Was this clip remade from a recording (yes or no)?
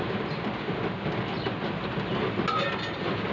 no